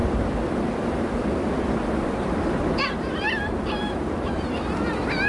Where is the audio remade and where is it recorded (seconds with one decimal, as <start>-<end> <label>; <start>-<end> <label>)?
0.0-5.3 recorded